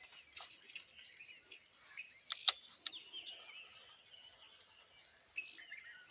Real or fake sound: real